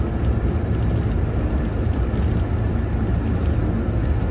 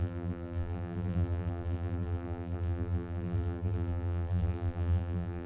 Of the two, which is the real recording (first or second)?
first